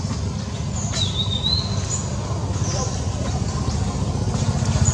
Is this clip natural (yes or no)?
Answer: yes